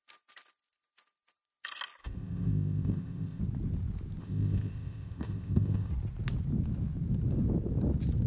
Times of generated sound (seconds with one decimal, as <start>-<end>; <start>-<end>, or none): 2.0-3.4; 4.2-5.9